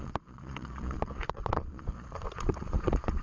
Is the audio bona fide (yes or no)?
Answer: no